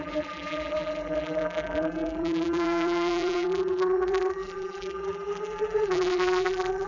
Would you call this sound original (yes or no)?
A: no